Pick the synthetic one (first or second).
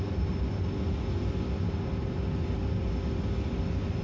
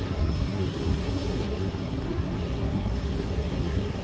second